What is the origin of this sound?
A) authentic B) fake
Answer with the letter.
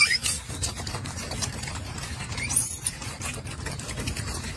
B